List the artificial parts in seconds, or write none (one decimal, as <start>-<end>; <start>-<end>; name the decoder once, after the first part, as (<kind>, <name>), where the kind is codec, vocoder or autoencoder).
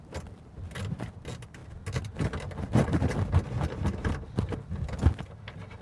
none